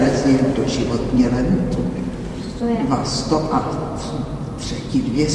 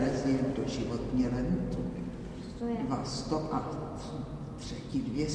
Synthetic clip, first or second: first